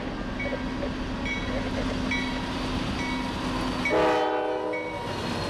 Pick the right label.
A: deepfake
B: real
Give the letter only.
B